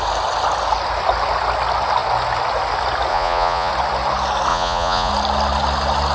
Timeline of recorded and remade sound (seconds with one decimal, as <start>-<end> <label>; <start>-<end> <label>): 0.0-3.1 recorded; 3.1-3.7 remade; 3.7-4.5 recorded; 4.5-5.1 remade; 5.1-6.1 recorded